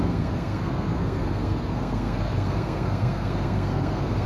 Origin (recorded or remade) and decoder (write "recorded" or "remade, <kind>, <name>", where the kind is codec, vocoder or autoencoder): remade, codec, SNAC